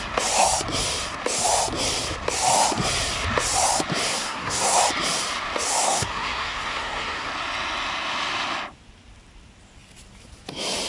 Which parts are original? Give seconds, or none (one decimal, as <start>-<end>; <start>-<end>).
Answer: 0.0-4.1; 4.8-5.8; 7.3-10.9